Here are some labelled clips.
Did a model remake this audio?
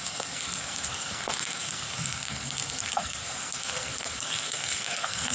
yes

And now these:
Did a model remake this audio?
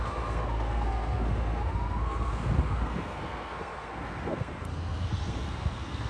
yes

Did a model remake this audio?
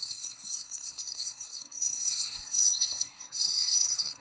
yes